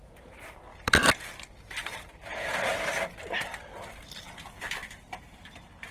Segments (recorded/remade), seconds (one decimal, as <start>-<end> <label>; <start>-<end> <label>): 0.0-0.7 recorded; 0.7-4.2 remade; 4.2-5.9 recorded